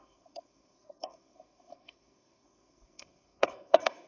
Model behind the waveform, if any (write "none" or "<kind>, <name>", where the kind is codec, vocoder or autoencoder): codec, SNAC